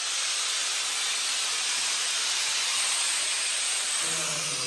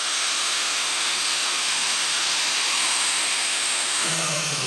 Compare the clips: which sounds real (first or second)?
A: first